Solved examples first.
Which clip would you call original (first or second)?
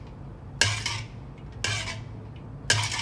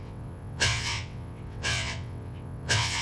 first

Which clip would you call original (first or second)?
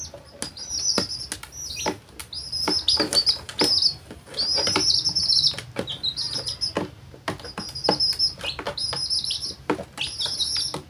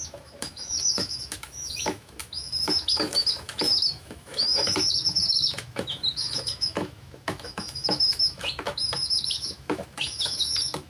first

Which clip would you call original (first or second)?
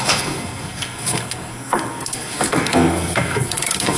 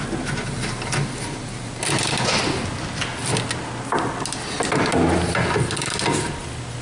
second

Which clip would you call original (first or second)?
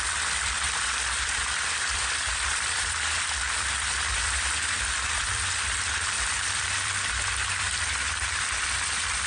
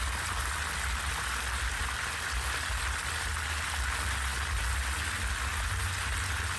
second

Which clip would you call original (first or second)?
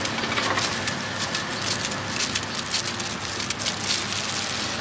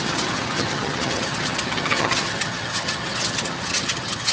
first